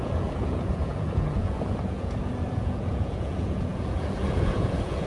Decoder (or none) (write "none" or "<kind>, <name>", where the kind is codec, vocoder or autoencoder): vocoder, Vocos